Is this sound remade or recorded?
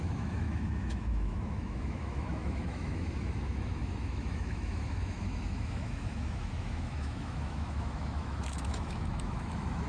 remade